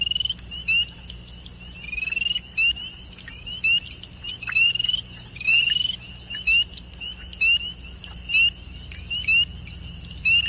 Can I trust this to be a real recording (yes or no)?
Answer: yes